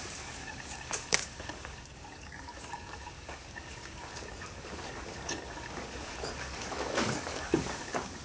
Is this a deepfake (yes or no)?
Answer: yes